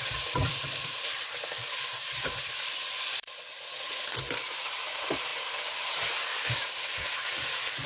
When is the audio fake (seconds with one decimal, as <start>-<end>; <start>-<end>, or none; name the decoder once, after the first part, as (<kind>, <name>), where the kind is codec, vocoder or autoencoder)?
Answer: 0.0-5.3 (vocoder, BigVGAN v2); 6.1-7.9